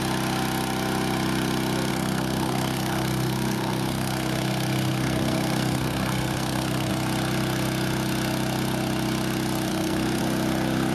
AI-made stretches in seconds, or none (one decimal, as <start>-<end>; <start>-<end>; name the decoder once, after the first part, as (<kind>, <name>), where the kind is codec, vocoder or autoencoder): 1.9-6.9 (codec, SNAC); 9.7-10.2